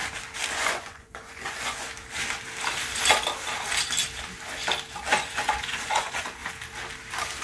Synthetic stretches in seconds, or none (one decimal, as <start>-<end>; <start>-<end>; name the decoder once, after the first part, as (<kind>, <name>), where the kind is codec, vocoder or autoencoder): 0.5-1.9 (vocoder, Vocos); 5.1-6.4